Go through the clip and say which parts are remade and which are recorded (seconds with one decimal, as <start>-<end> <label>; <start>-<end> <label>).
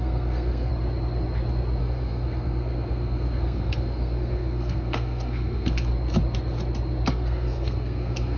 0.0-0.7 remade; 0.7-1.8 recorded; 1.8-5.9 remade; 5.9-7.1 recorded; 7.1-8.4 remade